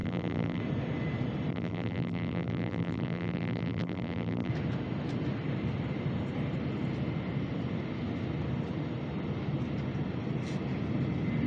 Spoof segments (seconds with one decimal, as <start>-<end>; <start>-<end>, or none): 0.0-0.6; 1.5-4.5